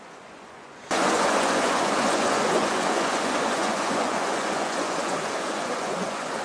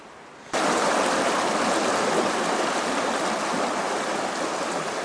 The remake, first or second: first